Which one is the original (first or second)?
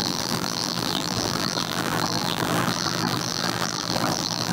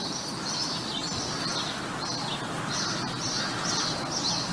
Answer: second